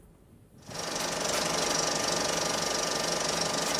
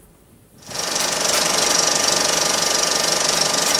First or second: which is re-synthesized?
second